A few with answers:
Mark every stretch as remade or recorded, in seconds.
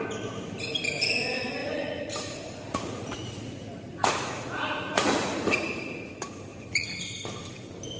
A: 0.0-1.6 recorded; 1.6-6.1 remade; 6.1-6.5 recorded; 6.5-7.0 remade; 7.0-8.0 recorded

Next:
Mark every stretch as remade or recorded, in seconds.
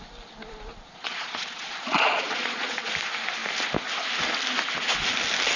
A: 0.0-0.7 recorded; 0.7-2.9 remade; 2.9-5.6 recorded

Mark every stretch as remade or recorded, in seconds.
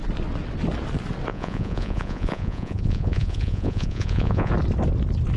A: 0.0-1.3 recorded; 1.3-4.5 remade; 4.5-5.4 recorded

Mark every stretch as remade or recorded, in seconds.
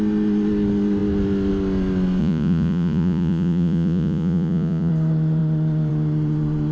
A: 0.0-2.2 recorded; 2.2-4.9 remade; 4.9-6.7 recorded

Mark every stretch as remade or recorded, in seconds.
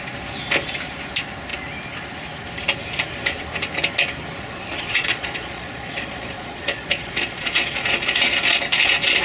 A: 0.0-4.9 recorded; 4.9-8.6 remade; 8.6-9.2 recorded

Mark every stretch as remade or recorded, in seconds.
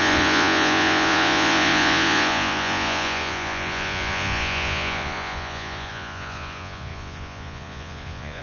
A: 0.0-8.4 remade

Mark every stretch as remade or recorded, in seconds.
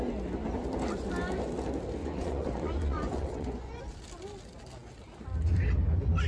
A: 0.0-2.0 recorded; 2.0-3.8 remade; 3.8-6.3 recorded